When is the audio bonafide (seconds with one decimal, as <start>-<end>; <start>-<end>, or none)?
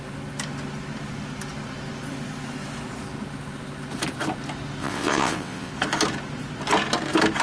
0.0-4.8; 5.7-7.4